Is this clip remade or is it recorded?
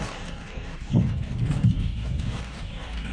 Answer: remade